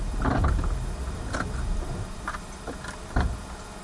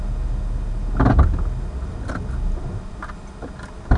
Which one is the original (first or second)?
second